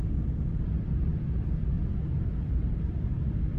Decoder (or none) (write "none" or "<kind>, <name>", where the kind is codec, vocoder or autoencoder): none